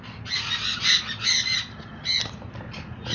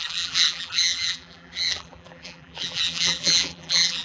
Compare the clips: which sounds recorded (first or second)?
first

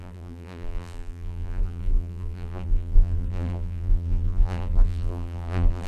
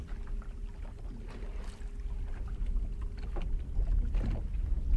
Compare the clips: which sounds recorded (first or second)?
second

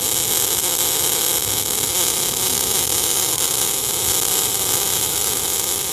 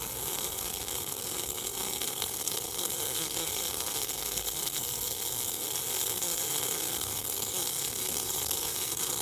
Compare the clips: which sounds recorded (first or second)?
first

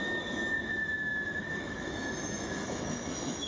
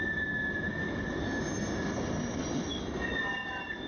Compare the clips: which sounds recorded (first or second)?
second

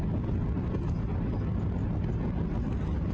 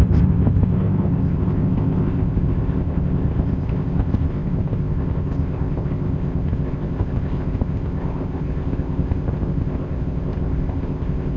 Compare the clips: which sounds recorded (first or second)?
first